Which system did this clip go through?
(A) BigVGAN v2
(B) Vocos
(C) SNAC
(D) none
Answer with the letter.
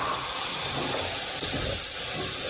D